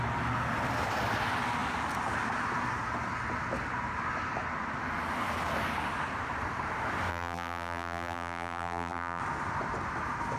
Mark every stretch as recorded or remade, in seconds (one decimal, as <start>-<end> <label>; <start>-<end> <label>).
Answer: 0.0-7.1 recorded; 7.1-9.2 remade; 9.2-10.4 recorded